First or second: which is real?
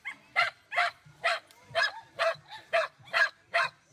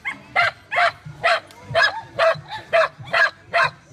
second